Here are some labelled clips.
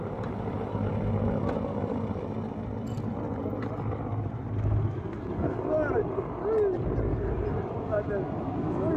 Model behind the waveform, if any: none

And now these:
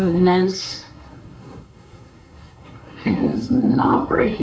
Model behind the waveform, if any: codec, SNAC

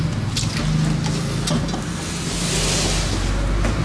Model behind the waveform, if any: none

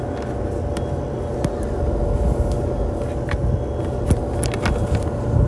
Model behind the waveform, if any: none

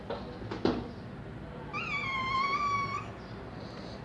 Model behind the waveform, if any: none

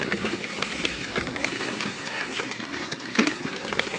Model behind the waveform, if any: codec, SNAC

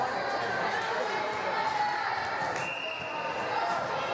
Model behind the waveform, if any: none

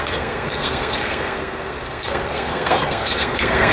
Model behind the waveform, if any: codec, SNAC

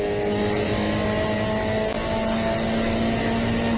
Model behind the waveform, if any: none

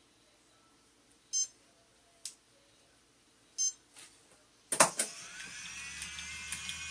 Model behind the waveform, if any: none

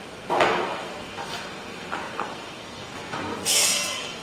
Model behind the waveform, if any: codec, SNAC